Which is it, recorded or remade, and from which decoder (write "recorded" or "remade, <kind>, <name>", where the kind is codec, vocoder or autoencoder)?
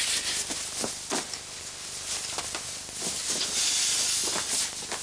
recorded